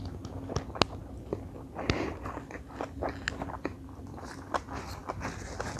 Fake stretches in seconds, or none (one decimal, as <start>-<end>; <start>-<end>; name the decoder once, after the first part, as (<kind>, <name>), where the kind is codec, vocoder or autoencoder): none